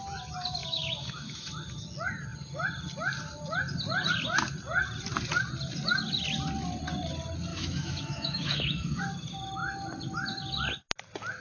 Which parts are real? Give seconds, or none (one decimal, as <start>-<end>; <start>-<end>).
0.0-0.6; 1.5-7.5; 9.0-11.4